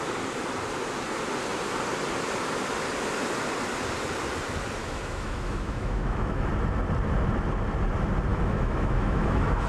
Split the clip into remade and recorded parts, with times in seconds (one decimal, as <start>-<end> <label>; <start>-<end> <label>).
0.0-4.8 recorded; 4.8-6.5 remade; 6.5-8.3 recorded; 8.3-9.7 remade